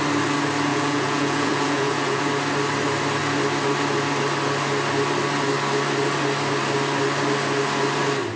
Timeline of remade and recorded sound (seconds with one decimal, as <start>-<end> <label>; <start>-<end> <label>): 0.0-0.7 recorded; 0.7-2.2 remade; 2.2-8.4 recorded